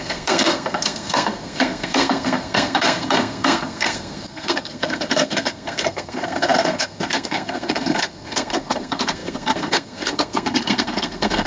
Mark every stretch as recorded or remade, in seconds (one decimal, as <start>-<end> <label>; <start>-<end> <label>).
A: 0.0-11.5 remade